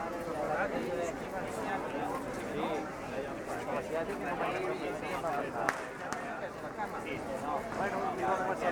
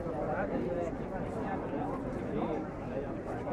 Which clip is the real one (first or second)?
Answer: first